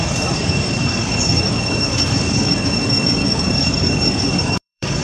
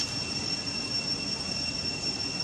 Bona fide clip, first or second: second